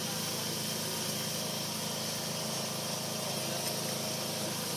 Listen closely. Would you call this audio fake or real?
real